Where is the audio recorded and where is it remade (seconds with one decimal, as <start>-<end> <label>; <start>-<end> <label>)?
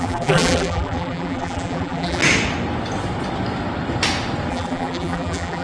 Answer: 0.0-2.2 remade; 2.2-4.5 recorded; 4.5-5.6 remade